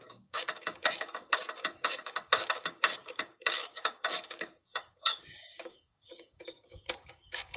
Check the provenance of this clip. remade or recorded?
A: remade